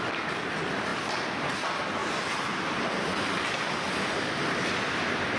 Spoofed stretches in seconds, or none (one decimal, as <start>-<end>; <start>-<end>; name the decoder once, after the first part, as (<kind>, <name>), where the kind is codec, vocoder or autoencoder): 0.0-0.9 (vocoder, BigVGAN v2); 1.4-2.0; 2.6-5.4